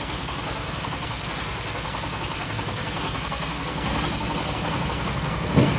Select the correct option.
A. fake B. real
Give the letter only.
A